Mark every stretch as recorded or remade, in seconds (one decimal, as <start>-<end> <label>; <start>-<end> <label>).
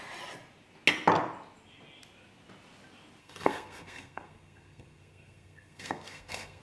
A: 0.0-3.2 recorded; 3.2-6.6 remade